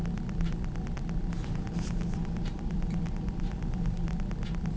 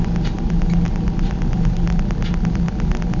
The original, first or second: second